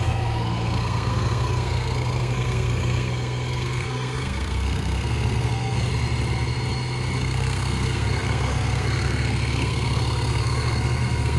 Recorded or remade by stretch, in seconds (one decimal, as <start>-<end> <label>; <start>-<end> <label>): 0.0-5.9 remade; 5.9-7.2 recorded; 7.2-11.4 remade